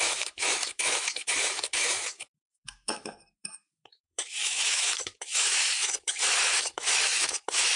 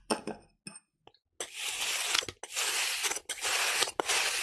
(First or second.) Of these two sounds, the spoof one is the first